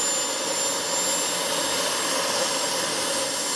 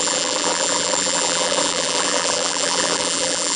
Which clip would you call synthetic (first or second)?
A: second